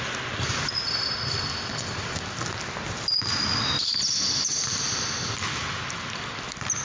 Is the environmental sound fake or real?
real